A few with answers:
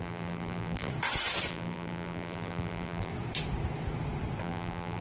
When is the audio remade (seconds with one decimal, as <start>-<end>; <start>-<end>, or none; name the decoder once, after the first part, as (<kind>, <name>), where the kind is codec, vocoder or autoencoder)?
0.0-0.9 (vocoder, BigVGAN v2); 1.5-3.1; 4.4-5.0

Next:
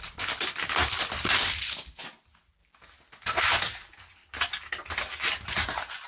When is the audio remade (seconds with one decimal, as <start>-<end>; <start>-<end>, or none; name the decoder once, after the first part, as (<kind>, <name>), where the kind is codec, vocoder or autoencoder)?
none

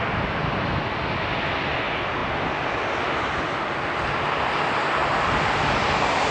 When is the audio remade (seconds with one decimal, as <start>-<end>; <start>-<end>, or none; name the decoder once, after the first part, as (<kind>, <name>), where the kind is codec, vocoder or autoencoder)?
none